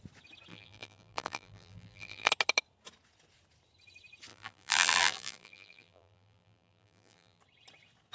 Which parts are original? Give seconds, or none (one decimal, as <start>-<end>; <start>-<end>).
0.0-0.5; 2.3-4.3; 7.4-8.1